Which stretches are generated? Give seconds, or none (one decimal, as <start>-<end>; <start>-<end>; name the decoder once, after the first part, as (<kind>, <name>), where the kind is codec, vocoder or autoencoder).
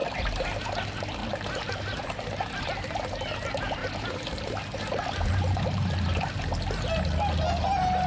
0.0-0.6 (vocoder, BigVGAN v2); 1.2-2.6; 3.8-6.4